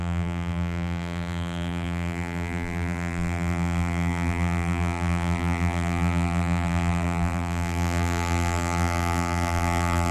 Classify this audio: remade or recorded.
remade